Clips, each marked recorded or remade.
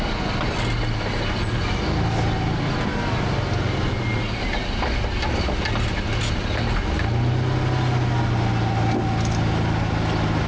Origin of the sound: recorded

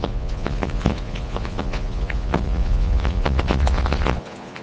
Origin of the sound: remade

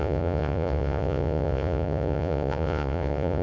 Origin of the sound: remade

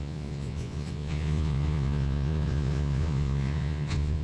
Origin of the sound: remade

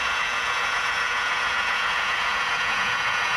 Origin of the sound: remade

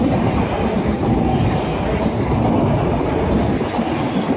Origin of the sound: recorded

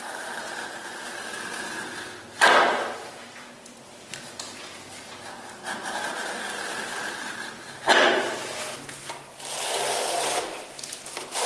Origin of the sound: recorded